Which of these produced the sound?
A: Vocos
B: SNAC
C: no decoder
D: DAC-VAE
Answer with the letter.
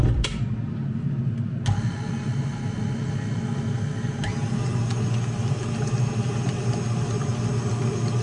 C